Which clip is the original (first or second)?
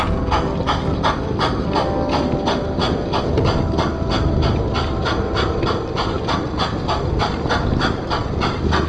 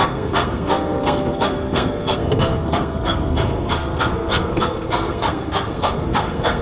first